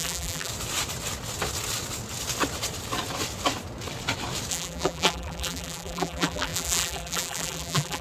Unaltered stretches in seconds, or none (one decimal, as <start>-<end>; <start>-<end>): 0.5-4.5